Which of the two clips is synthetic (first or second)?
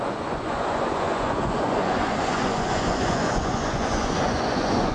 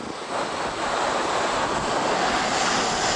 first